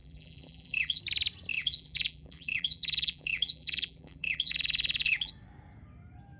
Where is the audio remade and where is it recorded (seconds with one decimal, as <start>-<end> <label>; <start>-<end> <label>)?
0.0-1.0 remade; 1.0-1.5 recorded; 1.5-5.3 remade; 5.3-6.4 recorded